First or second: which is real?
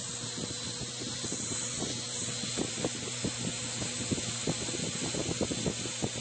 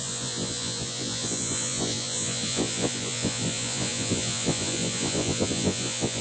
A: first